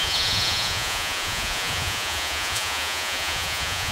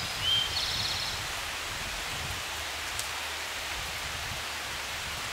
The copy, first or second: first